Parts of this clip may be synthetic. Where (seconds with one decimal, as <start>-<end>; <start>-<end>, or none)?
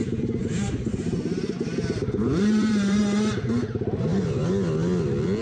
0.0-3.0